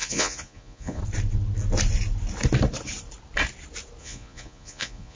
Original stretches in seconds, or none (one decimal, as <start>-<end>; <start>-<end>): 1.0-4.0